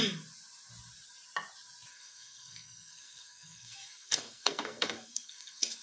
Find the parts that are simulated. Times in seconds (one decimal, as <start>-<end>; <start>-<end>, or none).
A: 1.9-5.8